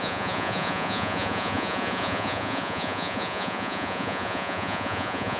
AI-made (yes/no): yes